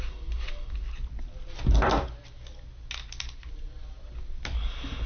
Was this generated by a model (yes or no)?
no